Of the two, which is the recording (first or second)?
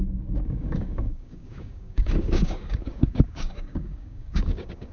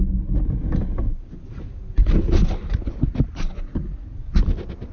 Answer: second